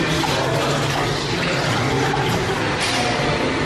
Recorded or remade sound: recorded